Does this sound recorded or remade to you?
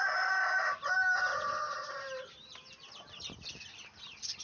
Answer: recorded